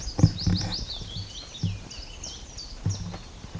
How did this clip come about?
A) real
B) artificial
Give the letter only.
A